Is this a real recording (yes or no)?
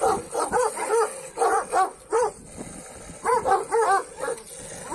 yes